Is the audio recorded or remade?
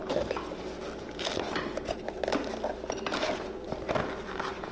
recorded